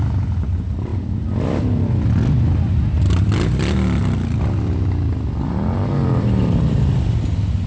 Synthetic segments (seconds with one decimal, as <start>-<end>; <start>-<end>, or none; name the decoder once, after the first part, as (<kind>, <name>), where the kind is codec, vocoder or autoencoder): none